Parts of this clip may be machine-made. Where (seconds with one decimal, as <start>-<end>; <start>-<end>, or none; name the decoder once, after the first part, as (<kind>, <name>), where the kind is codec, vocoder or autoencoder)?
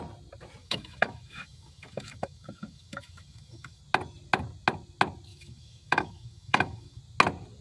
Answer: 0.6-3.8 (autoencoder, DAC-VAE); 5.3-7.0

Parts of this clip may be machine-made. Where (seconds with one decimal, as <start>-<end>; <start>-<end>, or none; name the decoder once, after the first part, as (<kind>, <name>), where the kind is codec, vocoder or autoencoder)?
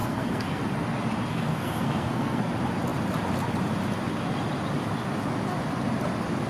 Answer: 0.0-0.6 (codec, SNAC); 1.3-2.5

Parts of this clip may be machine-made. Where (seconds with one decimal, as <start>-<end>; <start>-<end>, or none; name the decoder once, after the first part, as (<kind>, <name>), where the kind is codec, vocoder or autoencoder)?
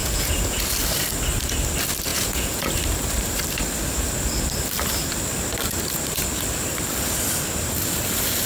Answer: 0.0-0.6 (vocoder, Vocos); 2.1-2.7